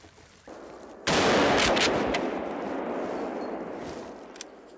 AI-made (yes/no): no